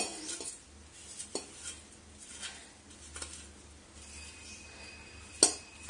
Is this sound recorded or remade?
recorded